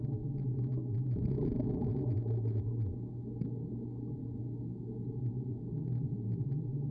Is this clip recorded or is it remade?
recorded